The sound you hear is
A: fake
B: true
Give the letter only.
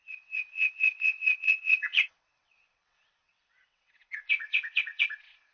A